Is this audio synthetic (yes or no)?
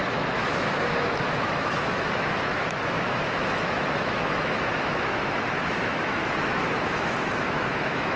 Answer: yes